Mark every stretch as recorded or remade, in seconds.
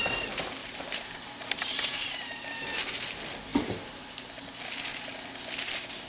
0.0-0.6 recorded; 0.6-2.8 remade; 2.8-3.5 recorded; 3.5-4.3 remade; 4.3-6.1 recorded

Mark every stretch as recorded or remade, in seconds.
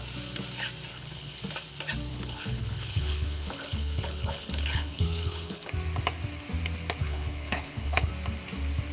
0.0-0.9 recorded; 0.9-1.5 remade; 1.5-2.1 recorded; 2.1-5.7 remade; 5.7-7.0 recorded; 7.0-8.1 remade; 8.1-8.9 recorded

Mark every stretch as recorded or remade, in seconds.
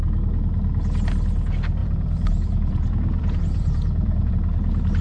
0.0-1.8 recorded; 1.8-4.3 remade; 4.3-5.0 recorded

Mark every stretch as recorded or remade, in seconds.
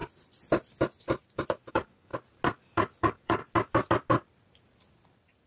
0.0-1.7 recorded; 1.7-2.1 remade; 2.1-3.0 recorded; 3.0-3.4 remade; 3.4-5.5 recorded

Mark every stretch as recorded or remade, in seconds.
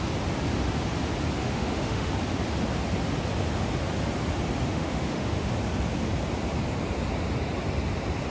0.0-1.4 recorded; 1.4-2.1 remade; 2.1-4.7 recorded; 4.7-5.5 remade; 5.5-8.3 recorded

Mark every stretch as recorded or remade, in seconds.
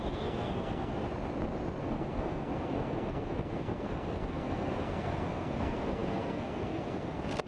0.0-1.0 remade; 1.0-1.8 recorded; 1.8-7.5 remade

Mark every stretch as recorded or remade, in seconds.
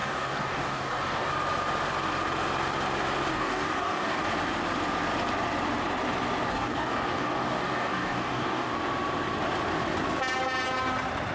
0.0-1.3 remade; 1.3-3.3 recorded; 3.3-4.2 remade; 4.2-6.5 recorded; 6.5-8.7 remade; 8.7-11.3 recorded